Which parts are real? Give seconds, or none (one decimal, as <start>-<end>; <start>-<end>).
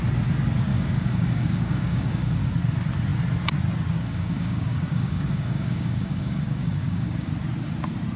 0.0-0.7; 2.4-4.0; 7.3-8.2